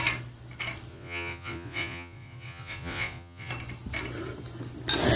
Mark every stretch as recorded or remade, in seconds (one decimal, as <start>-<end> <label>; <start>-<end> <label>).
0.0-0.9 recorded; 0.9-3.5 remade; 3.5-5.2 recorded